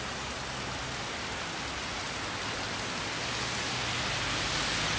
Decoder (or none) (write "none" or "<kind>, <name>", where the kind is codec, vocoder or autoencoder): none